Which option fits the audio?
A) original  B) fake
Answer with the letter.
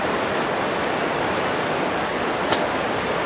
B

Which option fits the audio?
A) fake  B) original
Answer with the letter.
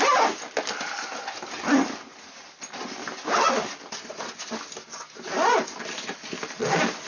B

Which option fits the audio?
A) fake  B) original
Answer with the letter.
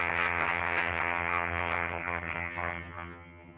A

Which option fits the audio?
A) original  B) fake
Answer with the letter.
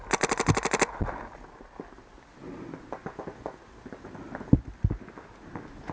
A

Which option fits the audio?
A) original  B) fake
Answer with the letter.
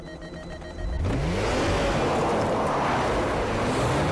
A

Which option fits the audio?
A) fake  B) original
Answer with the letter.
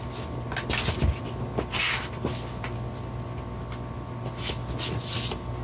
B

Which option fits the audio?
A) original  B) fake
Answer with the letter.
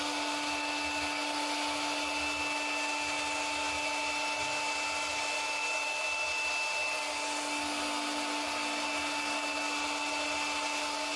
A